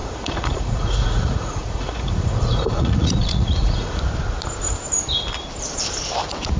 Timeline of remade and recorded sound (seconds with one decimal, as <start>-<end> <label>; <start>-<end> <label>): 0.0-4.0 remade; 4.0-6.6 recorded